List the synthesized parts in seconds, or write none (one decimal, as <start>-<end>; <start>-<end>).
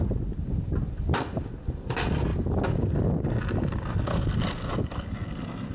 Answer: none